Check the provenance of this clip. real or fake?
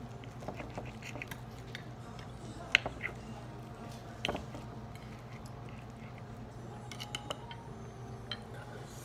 real